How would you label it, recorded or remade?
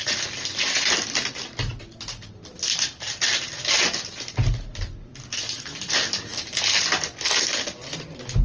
recorded